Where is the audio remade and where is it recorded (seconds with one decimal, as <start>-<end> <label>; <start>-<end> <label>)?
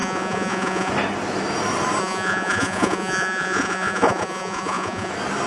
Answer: 0.0-0.9 remade; 0.9-2.0 recorded; 2.0-5.1 remade; 5.1-5.5 recorded